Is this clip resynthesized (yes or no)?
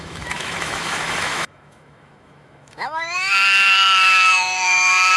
yes